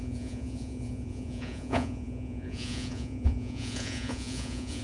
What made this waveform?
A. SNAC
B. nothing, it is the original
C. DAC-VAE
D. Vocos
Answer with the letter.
D